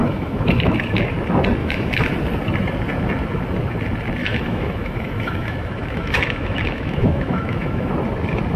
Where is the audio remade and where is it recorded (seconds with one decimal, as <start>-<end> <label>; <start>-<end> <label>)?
0.0-1.1 remade; 1.1-1.6 recorded; 1.6-2.1 remade; 2.1-4.2 recorded; 4.2-7.9 remade; 7.9-8.6 recorded